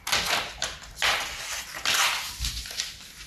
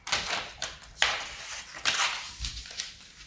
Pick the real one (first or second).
first